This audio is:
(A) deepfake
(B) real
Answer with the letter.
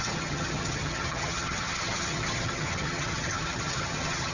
A